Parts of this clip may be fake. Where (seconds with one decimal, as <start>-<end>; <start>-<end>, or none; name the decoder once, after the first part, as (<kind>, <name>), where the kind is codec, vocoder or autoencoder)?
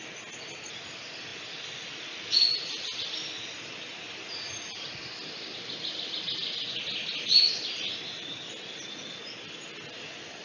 none